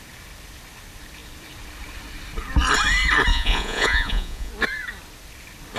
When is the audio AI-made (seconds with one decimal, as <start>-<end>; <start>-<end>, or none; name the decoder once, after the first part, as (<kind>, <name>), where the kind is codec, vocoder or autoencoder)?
3.3-4.5 (vocoder, Vocos)